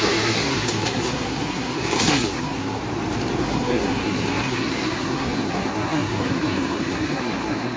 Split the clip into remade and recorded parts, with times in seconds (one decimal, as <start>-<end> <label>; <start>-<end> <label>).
0.0-2.8 remade; 2.8-3.4 recorded; 3.4-7.8 remade

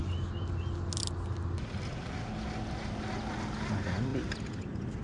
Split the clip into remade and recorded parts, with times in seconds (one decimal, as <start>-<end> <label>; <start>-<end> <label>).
0.0-5.0 recorded

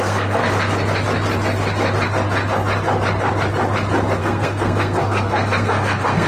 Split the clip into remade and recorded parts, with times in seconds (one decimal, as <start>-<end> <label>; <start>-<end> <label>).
0.0-0.4 remade; 0.4-4.2 recorded; 4.2-6.3 remade